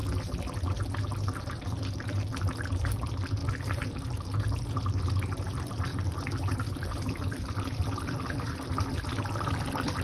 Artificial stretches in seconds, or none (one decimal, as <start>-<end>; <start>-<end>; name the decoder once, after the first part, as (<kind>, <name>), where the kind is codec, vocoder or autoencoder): 1.5-3.4 (vocoder, BigVGAN v2); 5.1-10.0